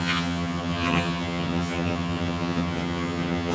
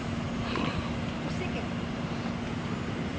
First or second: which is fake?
first